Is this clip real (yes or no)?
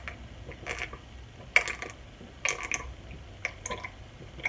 yes